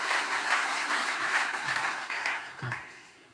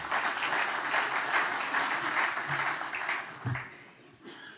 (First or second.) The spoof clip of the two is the first